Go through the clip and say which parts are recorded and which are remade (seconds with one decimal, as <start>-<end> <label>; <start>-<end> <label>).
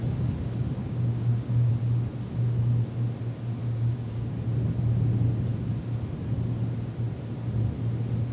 0.0-0.8 recorded; 0.8-1.7 remade; 1.7-3.6 recorded; 3.6-4.3 remade; 4.3-8.3 recorded